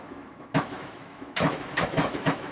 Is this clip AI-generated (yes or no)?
yes